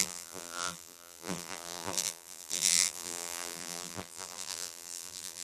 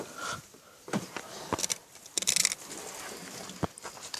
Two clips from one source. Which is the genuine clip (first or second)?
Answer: second